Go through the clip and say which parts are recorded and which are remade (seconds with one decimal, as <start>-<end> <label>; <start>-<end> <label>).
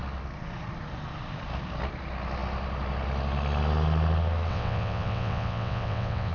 0.0-4.5 recorded; 4.5-6.3 remade